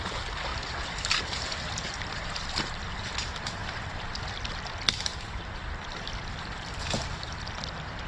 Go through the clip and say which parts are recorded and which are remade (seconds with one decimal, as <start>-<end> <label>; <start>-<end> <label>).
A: 0.0-0.5 recorded; 0.5-2.7 remade; 2.7-3.6 recorded; 3.6-4.2 remade; 4.2-5.1 recorded; 5.1-6.7 remade; 6.7-8.1 recorded